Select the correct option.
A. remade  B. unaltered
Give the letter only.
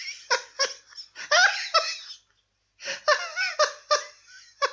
B